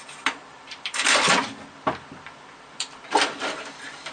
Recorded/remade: remade